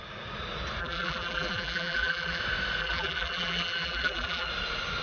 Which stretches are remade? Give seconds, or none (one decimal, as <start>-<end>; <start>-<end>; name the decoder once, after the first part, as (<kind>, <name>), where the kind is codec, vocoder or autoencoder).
0.8-2.4 (vocoder, BigVGAN v2); 2.8-4.5